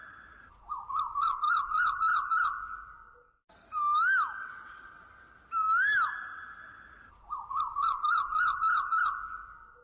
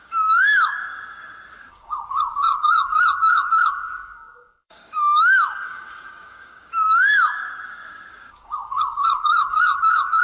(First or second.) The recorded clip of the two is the first